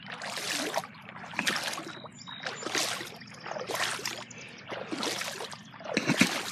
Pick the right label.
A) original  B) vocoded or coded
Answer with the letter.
A